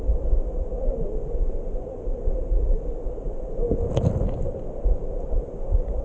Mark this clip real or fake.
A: real